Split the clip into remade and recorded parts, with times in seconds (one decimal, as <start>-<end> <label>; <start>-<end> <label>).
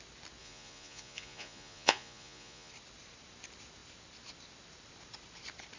0.0-0.4 recorded; 0.4-2.7 remade; 2.7-5.8 recorded